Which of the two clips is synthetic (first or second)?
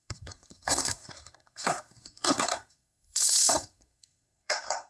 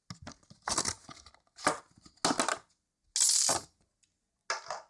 first